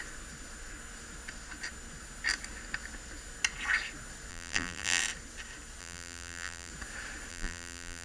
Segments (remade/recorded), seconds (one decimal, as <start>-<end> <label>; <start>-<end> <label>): 0.0-4.3 recorded; 4.3-5.0 remade; 5.0-5.8 recorded; 5.8-6.7 remade; 6.7-7.3 recorded; 7.3-8.0 remade

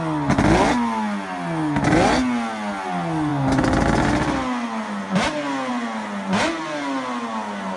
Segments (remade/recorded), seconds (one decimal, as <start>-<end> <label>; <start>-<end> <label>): 0.0-7.8 recorded

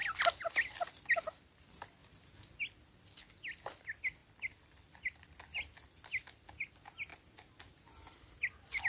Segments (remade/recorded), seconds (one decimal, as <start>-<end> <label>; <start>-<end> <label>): 0.0-4.2 recorded; 4.2-6.5 remade; 6.5-7.1 recorded; 7.1-7.8 remade; 7.8-8.9 recorded

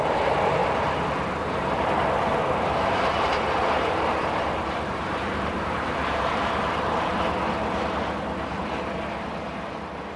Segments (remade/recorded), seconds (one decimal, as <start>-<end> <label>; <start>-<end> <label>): 0.0-0.6 remade; 0.6-1.4 recorded; 1.4-7.1 remade; 7.1-8.6 recorded; 8.6-10.2 remade

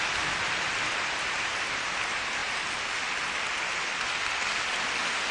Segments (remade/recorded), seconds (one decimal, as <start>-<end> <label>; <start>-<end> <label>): 0.0-2.4 recorded; 2.4-3.2 remade; 3.2-5.3 recorded

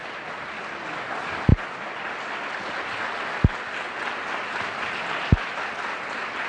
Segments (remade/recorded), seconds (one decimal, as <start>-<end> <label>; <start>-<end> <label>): 0.0-6.5 recorded

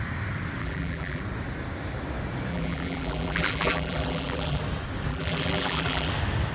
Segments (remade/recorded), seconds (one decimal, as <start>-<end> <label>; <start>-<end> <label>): 0.0-0.6 recorded; 0.6-1.2 remade; 1.2-2.5 recorded; 2.5-4.6 remade; 4.6-5.1 recorded; 5.1-6.1 remade; 6.1-6.5 recorded

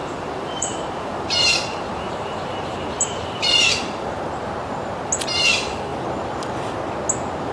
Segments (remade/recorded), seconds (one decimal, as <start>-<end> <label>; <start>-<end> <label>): 0.0-4.2 remade; 4.2-7.5 recorded